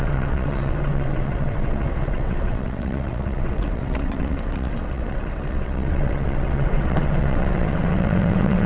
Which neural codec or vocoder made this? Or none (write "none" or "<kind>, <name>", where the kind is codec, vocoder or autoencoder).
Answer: vocoder, WaveNeXt